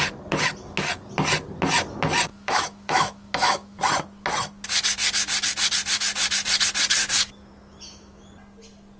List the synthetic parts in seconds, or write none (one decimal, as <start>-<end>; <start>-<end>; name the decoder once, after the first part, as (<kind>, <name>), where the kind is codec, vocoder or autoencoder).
2.3-3.8 (autoencoder, DAC-VAE); 7.0-8.3